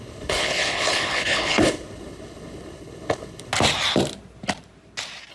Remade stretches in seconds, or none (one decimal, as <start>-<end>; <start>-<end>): 0.0-3.5